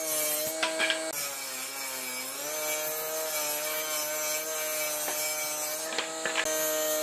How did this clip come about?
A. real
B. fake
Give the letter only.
A